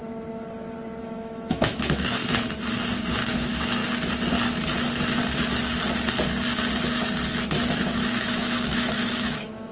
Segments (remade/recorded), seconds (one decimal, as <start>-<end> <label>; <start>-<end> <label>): 0.0-1.0 recorded; 1.0-2.2 remade; 2.2-3.1 recorded; 3.1-3.8 remade; 3.8-7.7 recorded; 7.7-9.7 remade